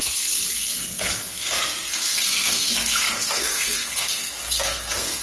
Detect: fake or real fake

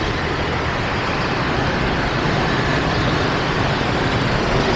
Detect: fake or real real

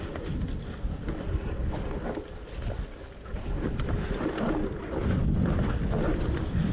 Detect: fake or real real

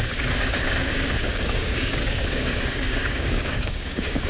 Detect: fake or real fake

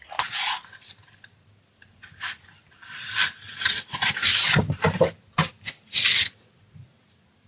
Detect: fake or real real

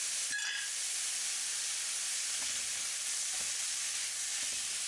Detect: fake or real real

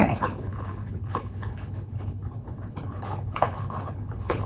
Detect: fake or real fake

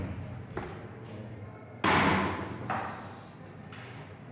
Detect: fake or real real